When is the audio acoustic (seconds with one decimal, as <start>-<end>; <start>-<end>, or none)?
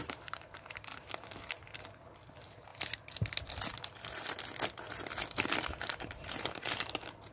0.9-1.8; 2.7-5.8